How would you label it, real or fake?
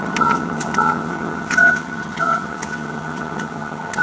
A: fake